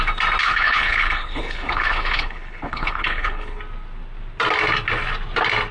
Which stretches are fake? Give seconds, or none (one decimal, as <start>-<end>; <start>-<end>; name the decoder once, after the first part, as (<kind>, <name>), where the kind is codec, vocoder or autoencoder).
0.4-3.6 (codec, HILCodec)